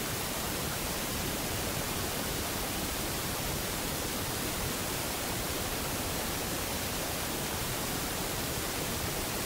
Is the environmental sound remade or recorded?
remade